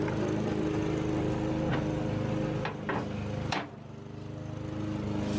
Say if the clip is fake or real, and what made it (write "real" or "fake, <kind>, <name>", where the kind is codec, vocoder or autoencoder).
real